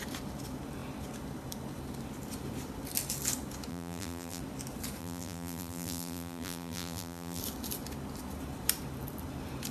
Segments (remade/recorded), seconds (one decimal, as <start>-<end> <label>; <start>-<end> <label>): 0.0-3.7 recorded; 3.7-4.4 remade; 4.4-5.0 recorded; 5.0-7.4 remade; 7.4-9.7 recorded

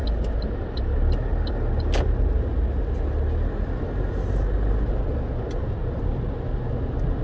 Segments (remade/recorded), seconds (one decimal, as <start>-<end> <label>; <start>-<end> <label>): 0.0-5.8 recorded; 5.8-6.3 remade; 6.3-7.2 recorded

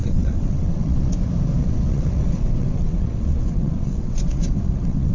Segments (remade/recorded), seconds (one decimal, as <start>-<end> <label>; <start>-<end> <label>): 0.0-1.1 remade; 1.1-1.6 recorded; 1.6-5.1 remade

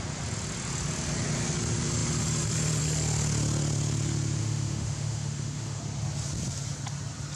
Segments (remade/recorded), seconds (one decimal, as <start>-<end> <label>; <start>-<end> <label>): 0.0-4.4 recorded; 4.4-5.8 remade; 5.8-7.4 recorded

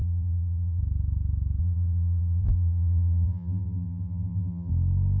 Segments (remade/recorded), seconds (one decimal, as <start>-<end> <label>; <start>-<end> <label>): 0.0-0.8 remade; 0.8-1.6 recorded; 1.6-4.7 remade; 4.7-5.2 recorded

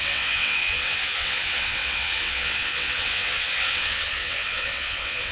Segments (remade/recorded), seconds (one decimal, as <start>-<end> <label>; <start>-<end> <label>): 0.0-5.3 remade

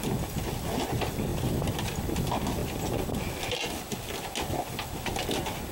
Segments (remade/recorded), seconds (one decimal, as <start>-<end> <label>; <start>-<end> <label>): 0.0-5.7 recorded